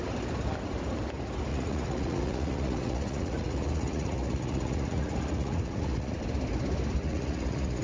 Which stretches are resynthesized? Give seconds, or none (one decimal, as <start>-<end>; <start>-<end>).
1.5-6.2; 7.0-7.8

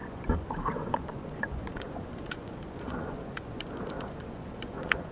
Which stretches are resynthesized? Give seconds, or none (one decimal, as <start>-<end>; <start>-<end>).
0.0-5.1

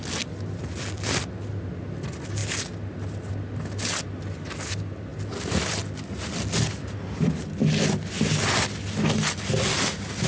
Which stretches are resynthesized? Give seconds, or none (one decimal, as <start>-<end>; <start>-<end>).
none

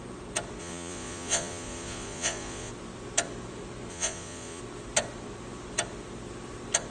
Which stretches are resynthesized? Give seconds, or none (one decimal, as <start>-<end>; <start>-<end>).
0.6-2.7; 3.9-4.6

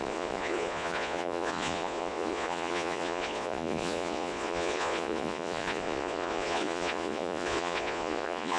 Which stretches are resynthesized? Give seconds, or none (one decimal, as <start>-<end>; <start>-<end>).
0.0-8.6

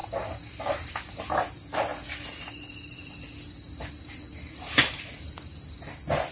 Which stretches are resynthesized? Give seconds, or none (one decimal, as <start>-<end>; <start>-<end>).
none

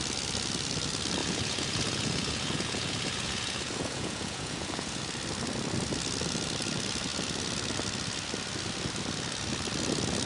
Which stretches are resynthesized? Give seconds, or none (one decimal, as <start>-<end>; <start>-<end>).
1.2-5.0